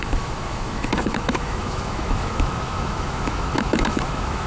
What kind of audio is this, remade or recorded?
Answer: remade